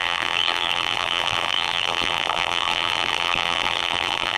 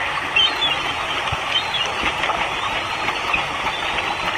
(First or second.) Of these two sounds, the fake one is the first